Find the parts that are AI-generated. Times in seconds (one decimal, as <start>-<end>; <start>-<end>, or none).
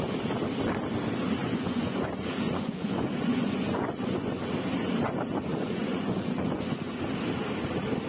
1.4-4.4; 5.5-6.9